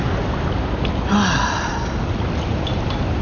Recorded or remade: recorded